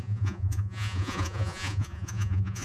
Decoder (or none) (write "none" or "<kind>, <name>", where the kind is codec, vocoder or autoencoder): vocoder, Vocos